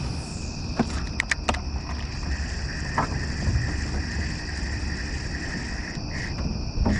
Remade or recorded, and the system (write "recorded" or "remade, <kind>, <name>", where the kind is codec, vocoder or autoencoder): recorded